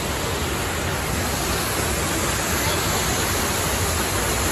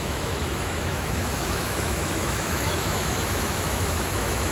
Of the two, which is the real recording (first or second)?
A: first